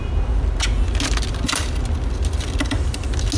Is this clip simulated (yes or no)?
no